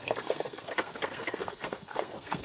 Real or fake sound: fake